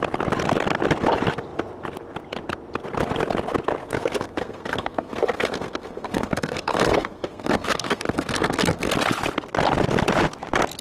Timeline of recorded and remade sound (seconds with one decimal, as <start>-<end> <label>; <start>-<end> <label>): 0.0-3.8 recorded; 3.8-8.9 remade; 8.9-10.8 recorded